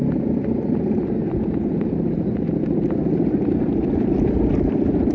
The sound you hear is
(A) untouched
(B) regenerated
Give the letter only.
A